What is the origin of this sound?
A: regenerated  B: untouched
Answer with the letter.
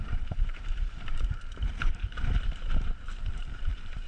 A